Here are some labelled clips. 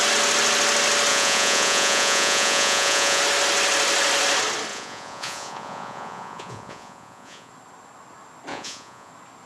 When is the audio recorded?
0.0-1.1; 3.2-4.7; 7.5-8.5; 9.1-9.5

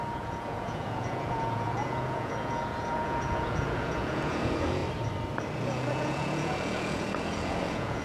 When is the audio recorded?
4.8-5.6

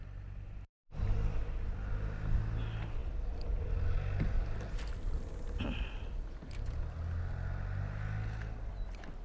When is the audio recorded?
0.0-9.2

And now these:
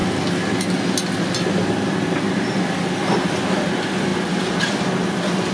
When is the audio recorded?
0.0-5.5

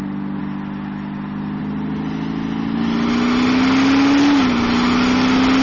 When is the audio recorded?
0.0-5.6

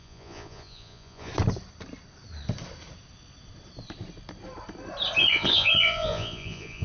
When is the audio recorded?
1.3-5.3